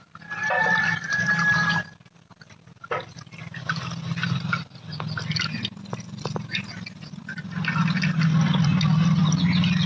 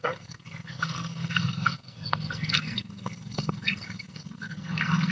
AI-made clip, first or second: second